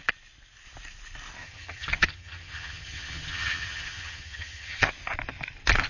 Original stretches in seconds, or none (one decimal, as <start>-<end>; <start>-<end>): 0.0-1.4; 4.9-5.9